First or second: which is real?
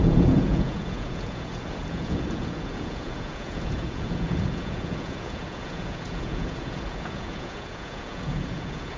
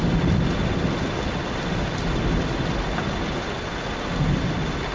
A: second